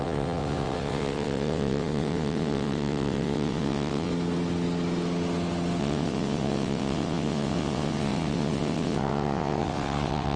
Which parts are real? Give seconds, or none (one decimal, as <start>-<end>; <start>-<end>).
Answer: 4.1-5.8

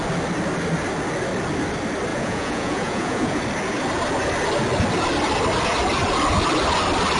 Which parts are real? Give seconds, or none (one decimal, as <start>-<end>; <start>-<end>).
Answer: 0.0-2.1; 3.4-7.2

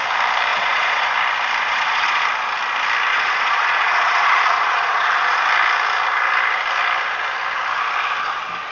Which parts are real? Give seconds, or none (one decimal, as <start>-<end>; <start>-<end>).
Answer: 0.0-0.5; 1.1-1.6; 2.2-3.1; 5.4-8.7

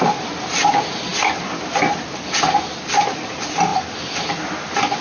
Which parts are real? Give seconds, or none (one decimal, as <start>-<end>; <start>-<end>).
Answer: 0.0-5.0

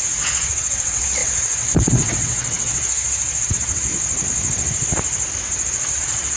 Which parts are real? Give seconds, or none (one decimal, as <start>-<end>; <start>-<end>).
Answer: 3.9-5.9

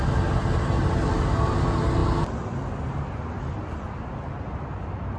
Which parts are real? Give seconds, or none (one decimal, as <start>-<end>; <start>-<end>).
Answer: 0.0-0.4; 1.3-5.2

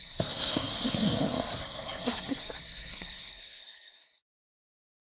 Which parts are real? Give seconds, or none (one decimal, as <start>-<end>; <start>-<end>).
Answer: 0.7-1.5

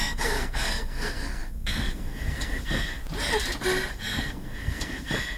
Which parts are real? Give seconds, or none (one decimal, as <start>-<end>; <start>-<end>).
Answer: 3.0-3.9